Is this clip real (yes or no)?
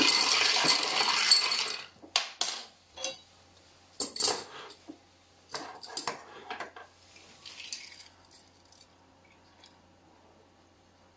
yes